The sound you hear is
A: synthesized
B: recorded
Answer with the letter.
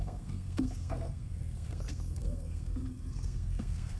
A